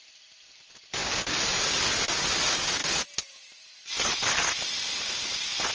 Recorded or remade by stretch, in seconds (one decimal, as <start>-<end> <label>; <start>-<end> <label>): 0.0-5.7 recorded